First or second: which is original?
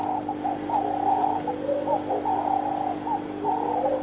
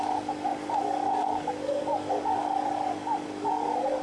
first